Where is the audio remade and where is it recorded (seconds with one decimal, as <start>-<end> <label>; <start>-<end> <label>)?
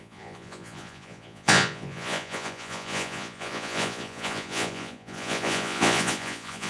0.0-6.7 remade